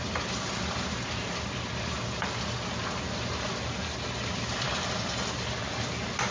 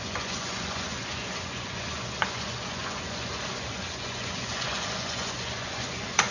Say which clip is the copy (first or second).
second